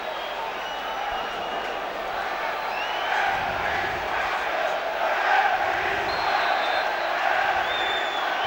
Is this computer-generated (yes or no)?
no